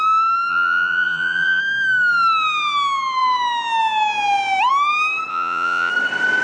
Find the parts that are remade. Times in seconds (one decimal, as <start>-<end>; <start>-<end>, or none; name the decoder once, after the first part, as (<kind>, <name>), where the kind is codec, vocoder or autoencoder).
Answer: 0.5-1.6 (vocoder, Vocos); 5.3-5.9